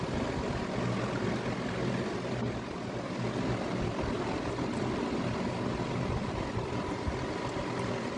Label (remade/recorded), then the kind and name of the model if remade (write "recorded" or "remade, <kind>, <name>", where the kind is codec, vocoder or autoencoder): recorded